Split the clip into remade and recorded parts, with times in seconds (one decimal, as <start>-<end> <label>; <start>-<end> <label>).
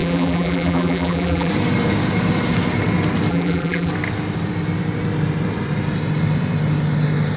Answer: 0.0-1.5 remade; 1.5-3.3 recorded; 3.3-3.9 remade; 3.9-7.4 recorded